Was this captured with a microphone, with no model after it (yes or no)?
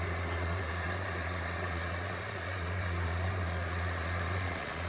no